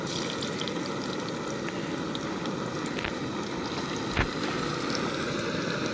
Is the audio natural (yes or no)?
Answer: yes